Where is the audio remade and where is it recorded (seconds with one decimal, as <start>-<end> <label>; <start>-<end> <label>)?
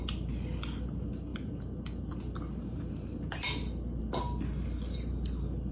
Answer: 0.0-5.7 recorded